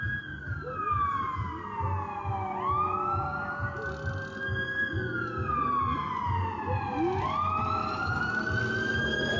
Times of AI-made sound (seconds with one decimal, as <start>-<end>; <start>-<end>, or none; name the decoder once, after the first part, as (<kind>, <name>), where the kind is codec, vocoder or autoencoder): none